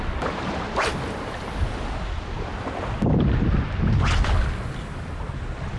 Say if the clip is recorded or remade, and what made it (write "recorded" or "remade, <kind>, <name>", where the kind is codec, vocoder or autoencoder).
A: recorded